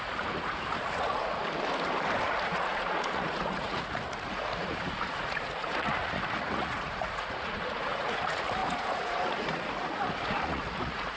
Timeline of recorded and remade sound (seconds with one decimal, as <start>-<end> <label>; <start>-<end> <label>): 0.0-1.4 remade; 1.4-2.2 recorded; 2.2-11.2 remade